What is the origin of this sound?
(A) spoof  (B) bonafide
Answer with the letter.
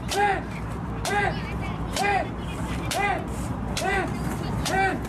A